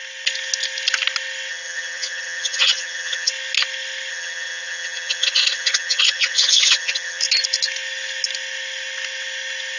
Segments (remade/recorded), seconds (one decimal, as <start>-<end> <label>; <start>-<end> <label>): 0.0-1.5 recorded; 1.5-3.3 remade; 3.3-4.1 recorded; 4.1-7.2 remade; 7.2-9.8 recorded